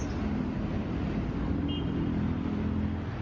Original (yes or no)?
yes